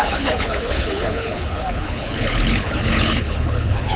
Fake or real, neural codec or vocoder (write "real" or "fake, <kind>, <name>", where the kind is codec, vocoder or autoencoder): fake, codec, HILCodec